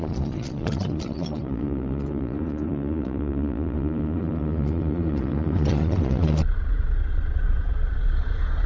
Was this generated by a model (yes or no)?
yes